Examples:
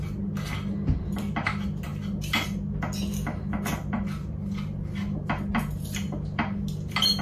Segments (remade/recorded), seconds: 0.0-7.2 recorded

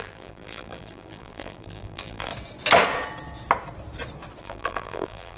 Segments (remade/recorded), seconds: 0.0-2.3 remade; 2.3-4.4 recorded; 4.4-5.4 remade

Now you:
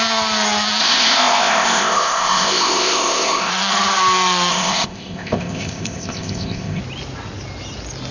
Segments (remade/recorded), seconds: 0.0-0.8 recorded; 0.8-3.5 remade; 3.5-4.5 recorded; 4.5-6.8 remade; 6.8-8.1 recorded